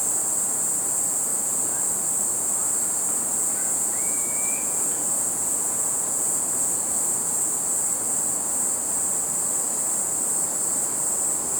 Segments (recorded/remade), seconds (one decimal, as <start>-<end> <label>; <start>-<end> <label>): 0.0-1.3 recorded; 1.3-1.8 remade; 1.8-3.3 recorded; 3.3-7.5 remade; 7.5-11.6 recorded